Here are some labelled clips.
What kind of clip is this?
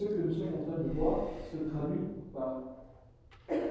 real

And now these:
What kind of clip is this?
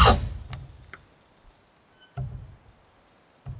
real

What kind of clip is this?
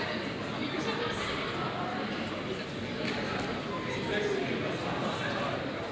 real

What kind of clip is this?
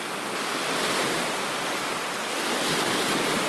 real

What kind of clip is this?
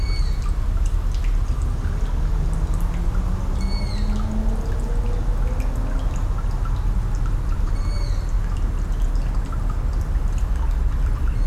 real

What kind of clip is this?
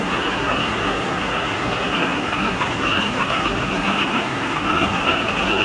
fake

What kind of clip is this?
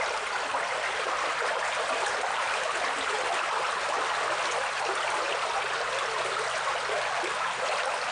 real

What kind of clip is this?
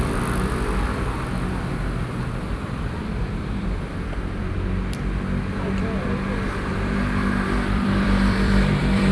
fake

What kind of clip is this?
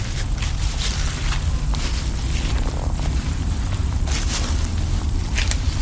real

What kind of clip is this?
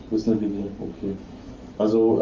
fake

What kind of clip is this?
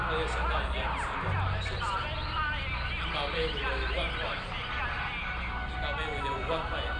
real